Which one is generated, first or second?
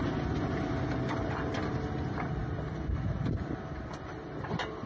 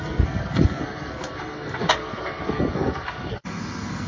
second